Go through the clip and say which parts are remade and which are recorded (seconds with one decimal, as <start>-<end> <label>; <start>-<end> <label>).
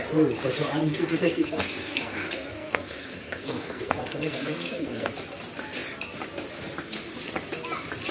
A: 0.0-0.8 recorded; 0.8-5.1 remade; 5.1-8.1 recorded